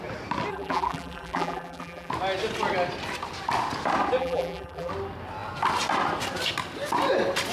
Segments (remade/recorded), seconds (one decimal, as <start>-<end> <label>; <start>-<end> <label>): 0.0-0.5 recorded; 0.5-2.1 remade; 2.1-4.2 recorded; 4.2-4.9 remade; 4.9-7.5 recorded